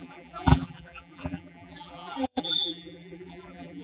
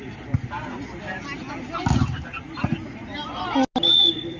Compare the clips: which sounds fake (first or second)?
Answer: first